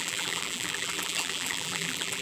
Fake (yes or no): yes